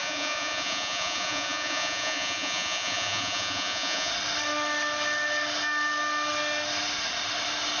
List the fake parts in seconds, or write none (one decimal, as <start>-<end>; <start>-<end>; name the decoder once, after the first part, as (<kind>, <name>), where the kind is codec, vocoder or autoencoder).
0.0-4.1 (vocoder, Vocos)